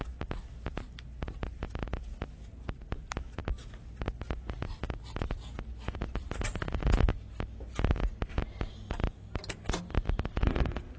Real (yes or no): yes